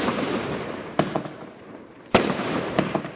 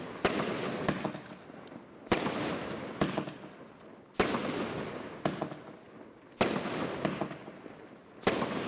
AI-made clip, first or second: first